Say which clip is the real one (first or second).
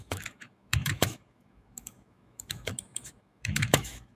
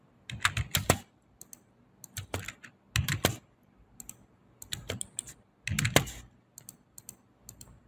second